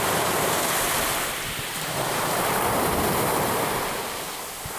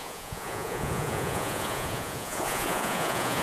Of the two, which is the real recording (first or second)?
first